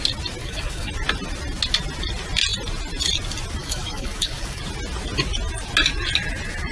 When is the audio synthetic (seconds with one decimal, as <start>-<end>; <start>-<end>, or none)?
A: 0.4-0.9; 3.6-4.6